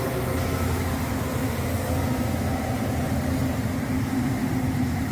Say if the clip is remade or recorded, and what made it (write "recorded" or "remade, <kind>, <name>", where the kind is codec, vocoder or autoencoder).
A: recorded